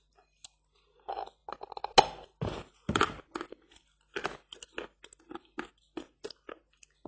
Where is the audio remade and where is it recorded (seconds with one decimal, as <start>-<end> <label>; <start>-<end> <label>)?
0.0-7.1 recorded